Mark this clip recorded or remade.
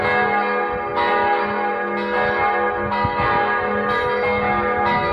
recorded